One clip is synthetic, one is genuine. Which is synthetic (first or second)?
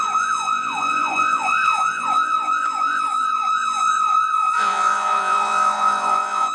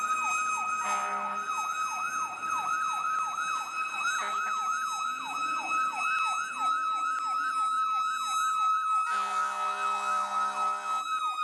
first